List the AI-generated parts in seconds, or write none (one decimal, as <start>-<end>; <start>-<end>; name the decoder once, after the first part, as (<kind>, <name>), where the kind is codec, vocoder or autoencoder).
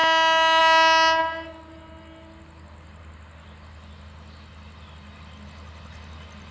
none